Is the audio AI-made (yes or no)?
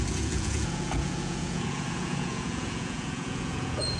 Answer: yes